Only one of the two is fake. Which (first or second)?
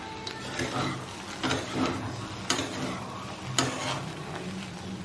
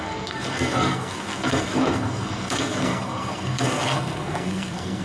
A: second